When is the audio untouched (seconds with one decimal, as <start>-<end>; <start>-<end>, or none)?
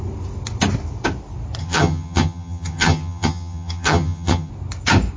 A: 0.0-1.6; 4.5-5.2